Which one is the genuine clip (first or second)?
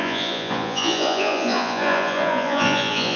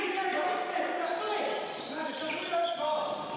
second